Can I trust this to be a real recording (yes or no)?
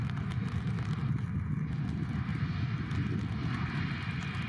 yes